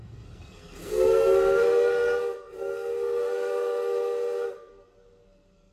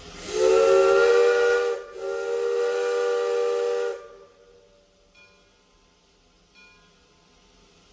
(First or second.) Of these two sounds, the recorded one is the second